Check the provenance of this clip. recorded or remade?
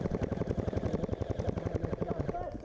recorded